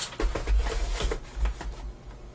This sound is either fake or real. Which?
real